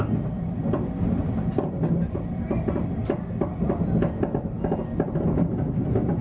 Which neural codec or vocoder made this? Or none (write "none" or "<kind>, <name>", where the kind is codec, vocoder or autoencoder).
none